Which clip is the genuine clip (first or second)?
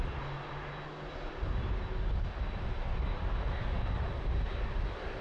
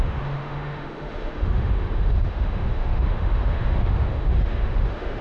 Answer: first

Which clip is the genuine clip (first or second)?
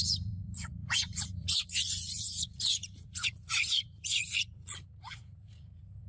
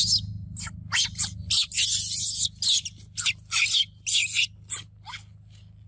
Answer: second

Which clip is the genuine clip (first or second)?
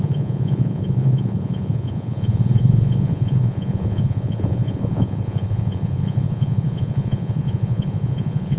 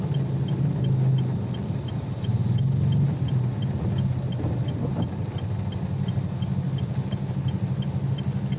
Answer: second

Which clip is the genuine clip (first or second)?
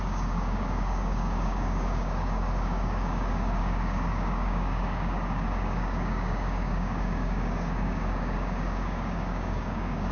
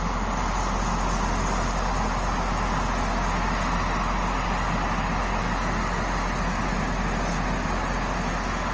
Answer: second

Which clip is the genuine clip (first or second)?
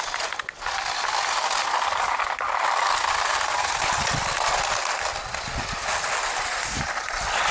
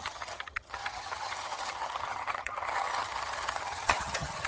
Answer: first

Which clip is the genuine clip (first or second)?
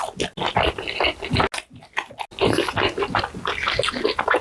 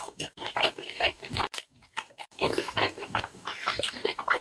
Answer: first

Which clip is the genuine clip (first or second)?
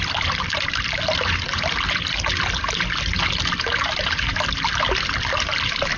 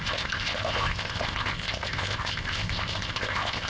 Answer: first